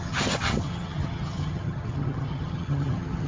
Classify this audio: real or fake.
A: fake